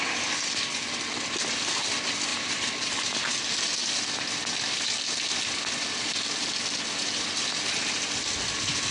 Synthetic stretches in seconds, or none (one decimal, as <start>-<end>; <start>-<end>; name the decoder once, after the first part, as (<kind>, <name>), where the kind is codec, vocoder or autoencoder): 2.3-3.3 (vocoder, BigVGAN v2)